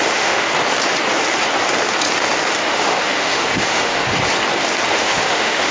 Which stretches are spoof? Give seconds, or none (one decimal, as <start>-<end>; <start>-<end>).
0.0-0.5; 2.6-4.0; 4.9-5.7